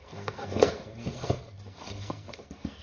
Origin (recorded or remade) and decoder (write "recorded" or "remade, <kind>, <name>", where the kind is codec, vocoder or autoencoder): remade, codec, SNAC